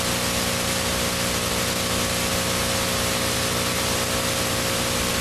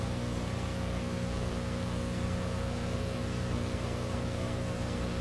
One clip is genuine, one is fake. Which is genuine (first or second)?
first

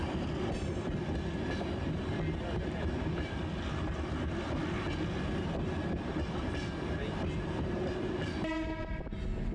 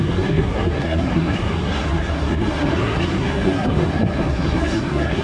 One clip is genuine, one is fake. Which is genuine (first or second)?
first